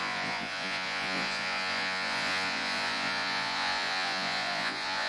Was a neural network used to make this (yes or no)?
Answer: yes